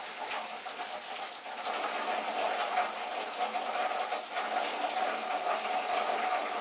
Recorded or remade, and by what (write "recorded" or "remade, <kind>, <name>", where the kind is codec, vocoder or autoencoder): recorded